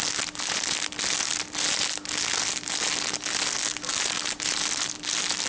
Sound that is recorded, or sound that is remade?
recorded